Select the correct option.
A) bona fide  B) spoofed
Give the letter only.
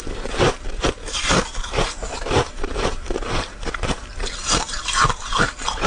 B